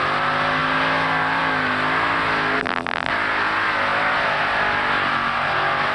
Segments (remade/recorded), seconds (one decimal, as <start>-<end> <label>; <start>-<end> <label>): 0.0-2.6 recorded; 2.6-3.1 remade; 3.1-5.9 recorded